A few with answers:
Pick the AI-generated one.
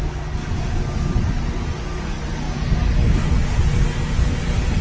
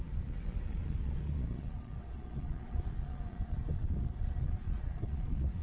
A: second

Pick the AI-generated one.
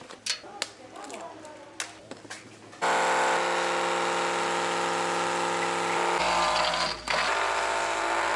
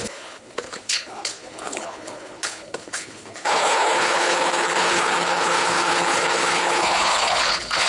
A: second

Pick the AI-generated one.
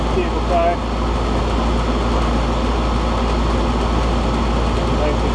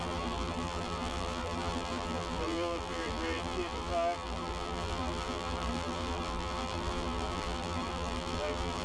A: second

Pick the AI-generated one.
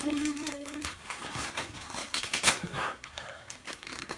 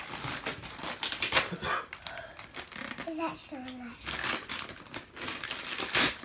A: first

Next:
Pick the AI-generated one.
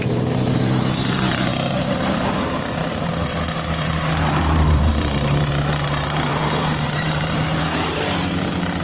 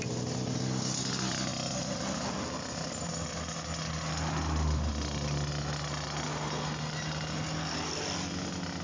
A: first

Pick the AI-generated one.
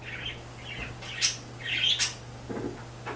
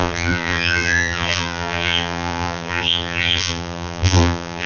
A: second